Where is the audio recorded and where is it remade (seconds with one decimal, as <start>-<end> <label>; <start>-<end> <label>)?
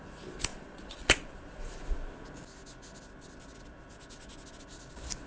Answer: 0.0-0.5 recorded; 0.5-1.8 remade; 1.8-5.3 recorded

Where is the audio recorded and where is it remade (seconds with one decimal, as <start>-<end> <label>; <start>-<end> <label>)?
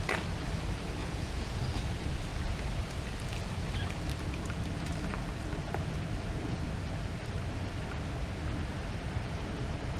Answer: 0.0-1.0 recorded; 1.0-1.6 remade; 1.6-10.0 recorded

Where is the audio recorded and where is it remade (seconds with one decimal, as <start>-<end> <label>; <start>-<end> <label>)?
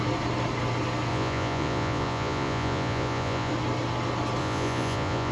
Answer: 0.0-1.1 recorded; 1.1-3.5 remade; 3.5-4.4 recorded; 4.4-5.3 remade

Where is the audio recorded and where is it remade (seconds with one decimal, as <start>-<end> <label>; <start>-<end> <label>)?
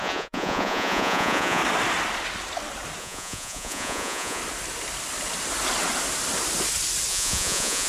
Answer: 0.0-1.6 remade; 1.6-3.0 recorded; 3.0-4.4 remade; 4.4-7.1 recorded; 7.1-7.9 remade